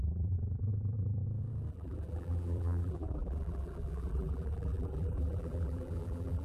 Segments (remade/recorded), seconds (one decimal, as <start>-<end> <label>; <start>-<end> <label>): 0.0-1.2 remade; 1.2-1.7 recorded; 1.7-6.4 remade